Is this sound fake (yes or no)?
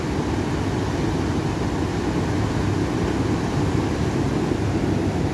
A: no